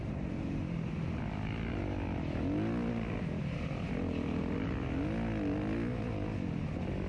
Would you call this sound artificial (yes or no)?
no